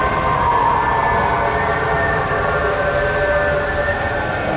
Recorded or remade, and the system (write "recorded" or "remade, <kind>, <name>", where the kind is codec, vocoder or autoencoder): recorded